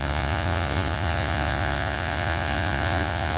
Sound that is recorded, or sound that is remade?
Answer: remade